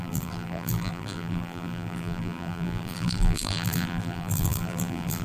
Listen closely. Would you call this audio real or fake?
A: fake